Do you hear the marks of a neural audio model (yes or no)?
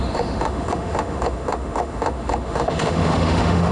yes